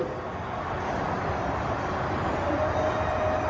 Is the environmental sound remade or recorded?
recorded